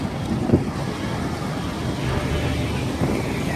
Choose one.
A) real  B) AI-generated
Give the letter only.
A